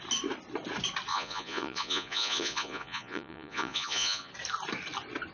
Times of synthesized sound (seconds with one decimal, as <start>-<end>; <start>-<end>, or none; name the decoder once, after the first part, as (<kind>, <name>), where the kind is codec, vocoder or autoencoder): 1.1-4.3 (vocoder, Vocos)